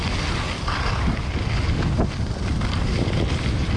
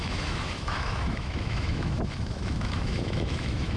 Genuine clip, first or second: first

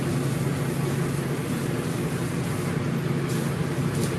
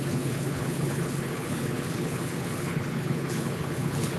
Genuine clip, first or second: first